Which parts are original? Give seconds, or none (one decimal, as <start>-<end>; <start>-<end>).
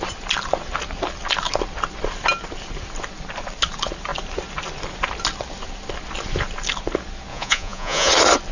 0.0-7.3; 8.1-8.5